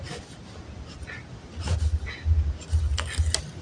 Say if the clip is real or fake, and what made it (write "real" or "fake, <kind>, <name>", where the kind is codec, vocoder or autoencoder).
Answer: real